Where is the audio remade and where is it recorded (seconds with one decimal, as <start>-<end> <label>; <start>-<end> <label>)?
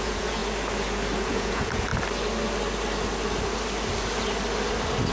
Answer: 0.0-0.4 remade; 0.4-1.3 recorded; 1.3-1.9 remade; 1.9-5.1 recorded